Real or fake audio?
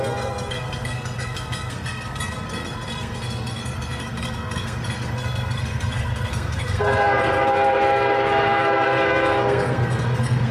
fake